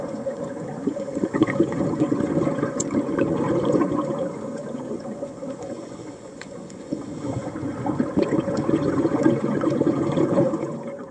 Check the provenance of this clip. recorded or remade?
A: remade